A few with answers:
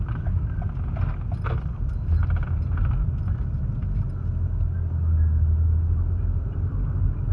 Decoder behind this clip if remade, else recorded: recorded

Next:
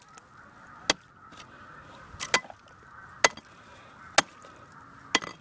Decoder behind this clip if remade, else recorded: recorded